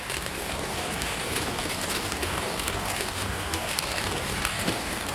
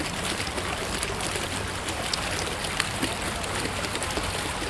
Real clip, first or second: second